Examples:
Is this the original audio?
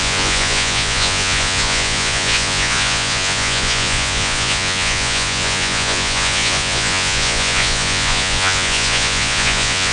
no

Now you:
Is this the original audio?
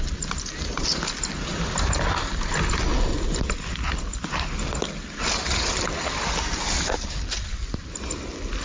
yes